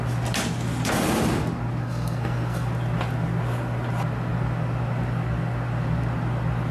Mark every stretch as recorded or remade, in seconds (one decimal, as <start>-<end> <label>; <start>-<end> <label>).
0.0-1.8 recorded; 1.8-2.7 remade; 2.7-6.7 recorded